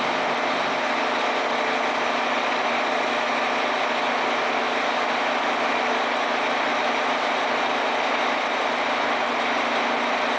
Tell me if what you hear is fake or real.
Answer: real